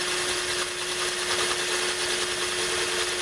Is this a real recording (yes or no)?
yes